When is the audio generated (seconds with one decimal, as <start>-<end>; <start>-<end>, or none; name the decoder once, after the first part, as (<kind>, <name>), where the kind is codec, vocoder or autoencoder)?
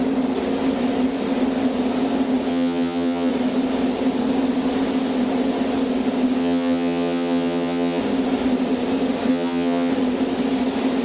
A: 2.5-3.3 (vocoder, HiFi-GAN); 6.4-8.0; 9.3-9.9